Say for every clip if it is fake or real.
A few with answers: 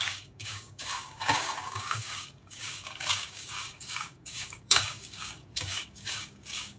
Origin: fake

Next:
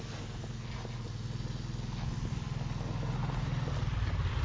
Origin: real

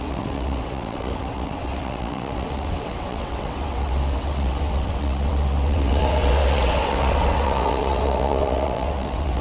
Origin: fake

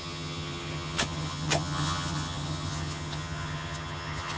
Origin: fake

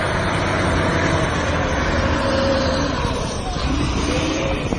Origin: fake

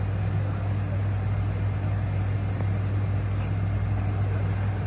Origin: real